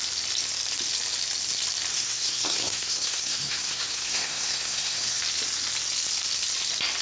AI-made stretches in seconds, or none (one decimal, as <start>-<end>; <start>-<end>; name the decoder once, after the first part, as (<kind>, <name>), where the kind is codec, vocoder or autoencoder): 1.9-5.2 (codec, SNAC)